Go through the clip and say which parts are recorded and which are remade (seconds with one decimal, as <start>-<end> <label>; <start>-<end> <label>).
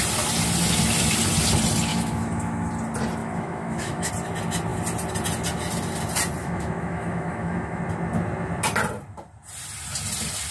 0.0-1.9 recorded; 1.9-2.7 remade; 2.7-3.2 recorded; 3.2-4.1 remade; 4.1-6.4 recorded; 6.4-7.8 remade; 7.8-10.5 recorded